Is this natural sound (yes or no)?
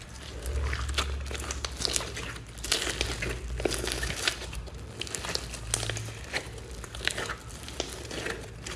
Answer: yes